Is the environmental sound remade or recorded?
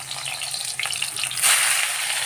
recorded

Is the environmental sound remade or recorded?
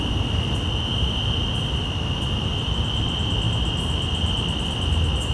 recorded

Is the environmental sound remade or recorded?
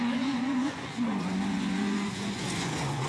remade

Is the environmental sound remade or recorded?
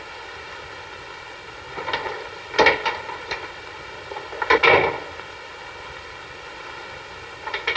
recorded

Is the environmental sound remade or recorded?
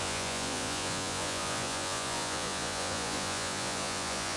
remade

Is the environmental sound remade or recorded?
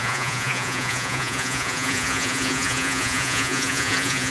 remade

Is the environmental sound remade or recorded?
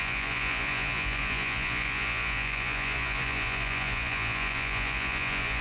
remade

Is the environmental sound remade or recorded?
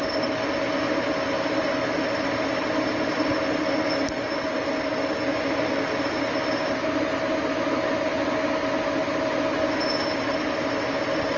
recorded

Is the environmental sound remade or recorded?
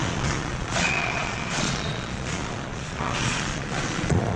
remade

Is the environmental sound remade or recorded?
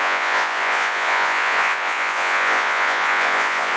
remade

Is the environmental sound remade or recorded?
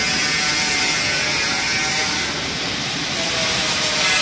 recorded